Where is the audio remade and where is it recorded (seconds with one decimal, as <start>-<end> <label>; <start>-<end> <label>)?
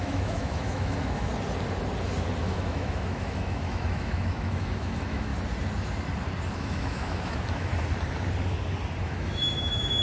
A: 0.0-1.3 remade; 1.3-2.4 recorded; 2.4-5.3 remade; 5.3-6.5 recorded; 6.5-7.7 remade; 7.7-9.0 recorded; 9.0-10.0 remade